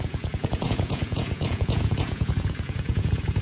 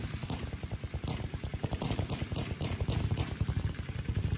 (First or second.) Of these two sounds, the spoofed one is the first